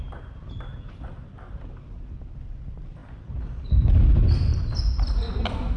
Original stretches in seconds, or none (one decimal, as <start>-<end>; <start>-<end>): 0.0-5.8